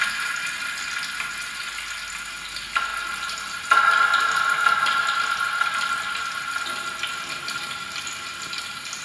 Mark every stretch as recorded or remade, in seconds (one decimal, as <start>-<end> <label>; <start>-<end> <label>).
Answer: 0.0-9.0 recorded